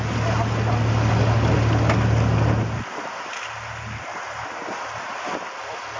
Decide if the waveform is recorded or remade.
recorded